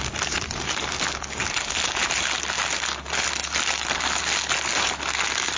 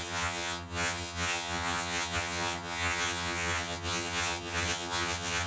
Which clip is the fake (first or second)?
second